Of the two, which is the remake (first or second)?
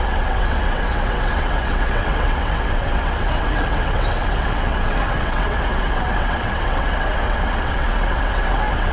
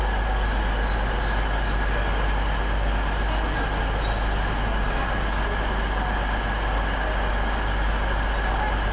first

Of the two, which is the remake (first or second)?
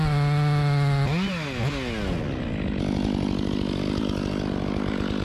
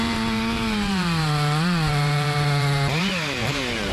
second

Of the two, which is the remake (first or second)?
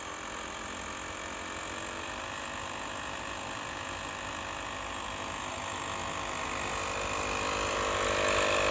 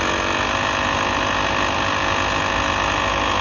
first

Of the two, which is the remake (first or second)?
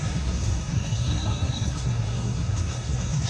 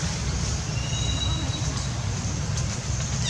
first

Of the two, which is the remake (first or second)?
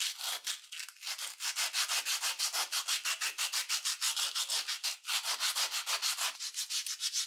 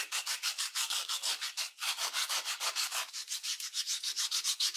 second